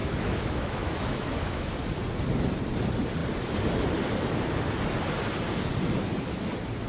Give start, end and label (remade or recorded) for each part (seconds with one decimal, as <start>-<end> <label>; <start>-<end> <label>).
0.0-1.7 remade; 1.7-6.9 recorded

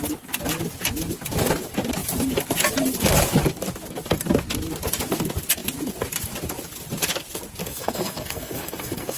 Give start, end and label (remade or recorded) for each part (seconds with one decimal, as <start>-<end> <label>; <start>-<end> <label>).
0.0-7.6 recorded; 7.6-9.2 remade